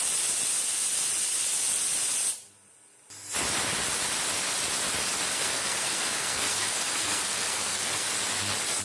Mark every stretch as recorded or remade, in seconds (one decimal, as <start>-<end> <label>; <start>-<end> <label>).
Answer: 0.0-5.3 recorded; 5.3-8.1 remade; 8.1-8.8 recorded